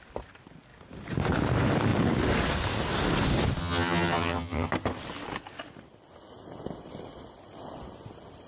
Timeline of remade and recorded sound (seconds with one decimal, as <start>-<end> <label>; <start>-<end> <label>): 0.0-3.6 recorded; 3.6-4.7 remade; 4.7-8.5 recorded